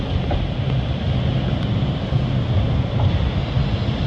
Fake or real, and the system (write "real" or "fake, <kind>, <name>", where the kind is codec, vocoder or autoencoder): real